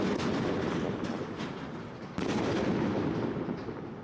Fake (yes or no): yes